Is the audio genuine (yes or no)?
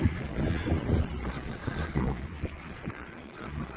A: no